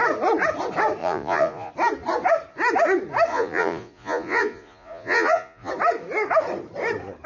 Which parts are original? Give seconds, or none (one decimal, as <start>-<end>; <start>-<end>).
0.0-1.0; 1.7-3.3; 5.7-7.3